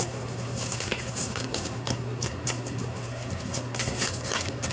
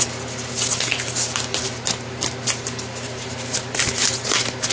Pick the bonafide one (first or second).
second